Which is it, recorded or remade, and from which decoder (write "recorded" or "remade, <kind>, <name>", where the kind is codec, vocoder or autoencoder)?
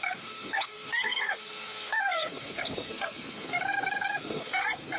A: remade, codec, SNAC